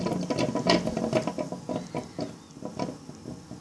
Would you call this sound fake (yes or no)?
no